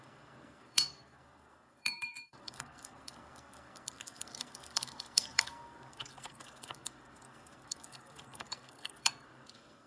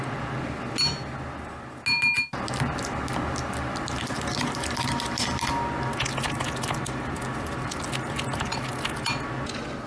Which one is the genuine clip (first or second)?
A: second